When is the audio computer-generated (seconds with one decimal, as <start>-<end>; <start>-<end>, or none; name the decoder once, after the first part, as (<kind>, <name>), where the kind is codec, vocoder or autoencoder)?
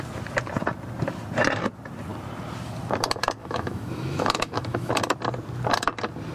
3.4-4.9 (autoencoder, DAC-VAE)